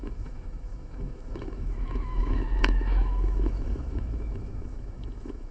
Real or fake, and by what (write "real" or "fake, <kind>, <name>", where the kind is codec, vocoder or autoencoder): fake, autoencoder, DAC-VAE